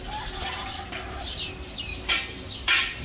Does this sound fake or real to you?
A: real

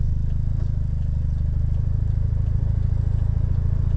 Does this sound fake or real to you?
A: real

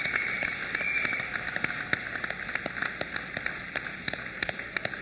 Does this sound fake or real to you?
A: real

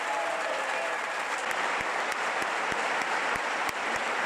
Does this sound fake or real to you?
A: real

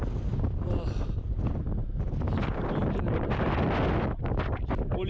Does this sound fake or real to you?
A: real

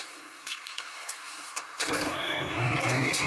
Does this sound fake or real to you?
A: fake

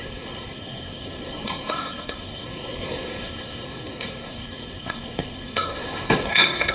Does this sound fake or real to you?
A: fake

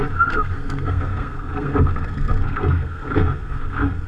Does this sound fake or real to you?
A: fake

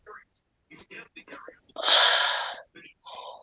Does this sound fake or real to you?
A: real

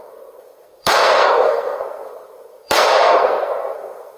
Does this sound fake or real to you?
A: fake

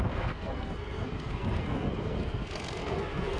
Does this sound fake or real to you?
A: fake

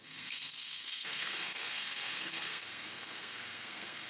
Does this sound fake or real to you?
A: fake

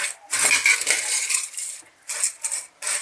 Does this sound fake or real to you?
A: real